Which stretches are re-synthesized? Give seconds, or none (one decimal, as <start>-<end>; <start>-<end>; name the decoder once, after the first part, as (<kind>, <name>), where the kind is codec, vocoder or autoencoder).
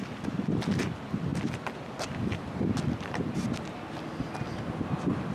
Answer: none